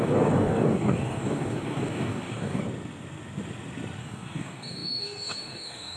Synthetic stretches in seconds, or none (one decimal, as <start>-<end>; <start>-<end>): 0.0-2.6; 4.0-6.0